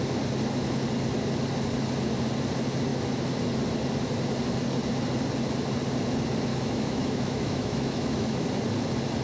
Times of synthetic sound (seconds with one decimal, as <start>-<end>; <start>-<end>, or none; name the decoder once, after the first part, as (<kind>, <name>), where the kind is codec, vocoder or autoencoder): 6.5-8.4 (autoencoder, DAC-VAE)